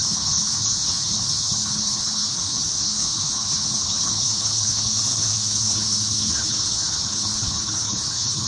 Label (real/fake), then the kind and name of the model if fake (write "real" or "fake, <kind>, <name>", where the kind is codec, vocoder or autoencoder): fake, codec, HILCodec